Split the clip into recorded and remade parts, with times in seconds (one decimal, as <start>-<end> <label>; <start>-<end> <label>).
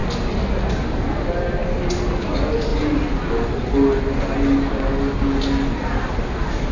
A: 0.0-6.7 recorded